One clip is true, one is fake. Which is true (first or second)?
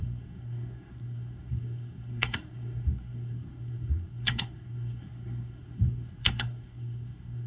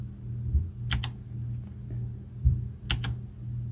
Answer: second